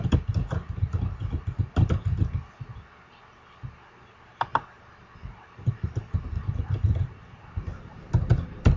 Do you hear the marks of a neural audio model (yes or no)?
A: no